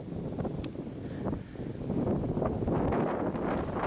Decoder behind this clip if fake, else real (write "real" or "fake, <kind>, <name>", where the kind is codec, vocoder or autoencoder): real